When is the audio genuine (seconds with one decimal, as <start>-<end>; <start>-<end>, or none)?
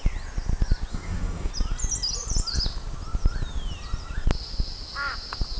0.0-0.9; 1.5-5.6